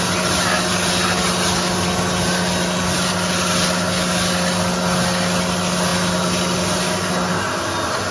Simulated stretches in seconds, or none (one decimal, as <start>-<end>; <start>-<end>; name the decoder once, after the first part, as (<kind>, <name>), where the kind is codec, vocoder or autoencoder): none